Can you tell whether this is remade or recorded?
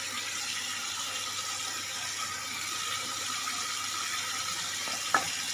recorded